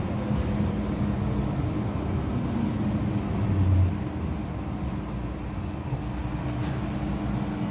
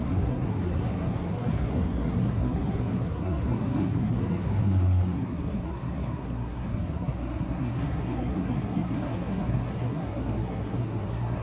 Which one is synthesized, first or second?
second